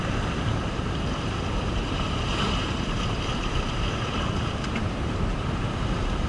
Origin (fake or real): fake